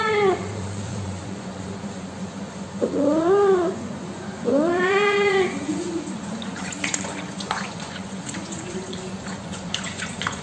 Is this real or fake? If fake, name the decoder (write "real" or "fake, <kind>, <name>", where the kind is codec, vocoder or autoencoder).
fake, vocoder, Vocos